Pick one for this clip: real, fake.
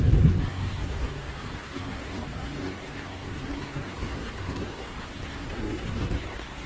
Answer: fake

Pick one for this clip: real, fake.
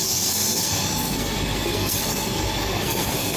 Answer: fake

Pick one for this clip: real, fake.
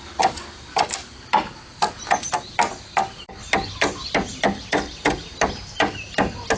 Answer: real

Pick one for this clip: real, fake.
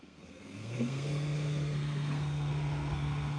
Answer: fake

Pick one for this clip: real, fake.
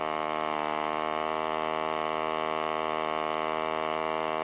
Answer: real